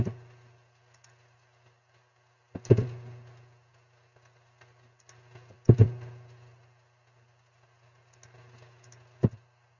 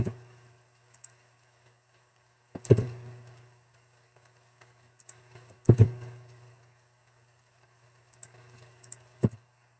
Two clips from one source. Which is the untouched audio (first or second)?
first